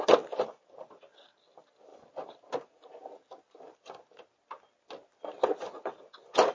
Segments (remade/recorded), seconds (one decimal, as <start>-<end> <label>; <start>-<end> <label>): 0.0-6.5 recorded